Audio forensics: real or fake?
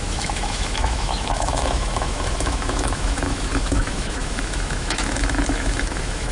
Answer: fake